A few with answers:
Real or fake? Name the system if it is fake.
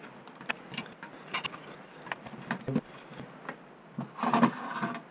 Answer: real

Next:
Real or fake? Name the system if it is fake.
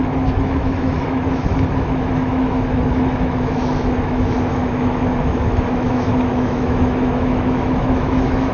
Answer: fake, autoencoder, DAC-VAE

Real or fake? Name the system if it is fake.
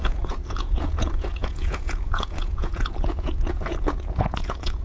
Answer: fake, vocoder, Vocos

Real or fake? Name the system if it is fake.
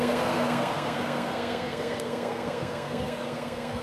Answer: fake, codec, SNAC